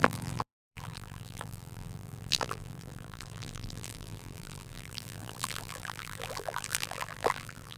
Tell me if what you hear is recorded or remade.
remade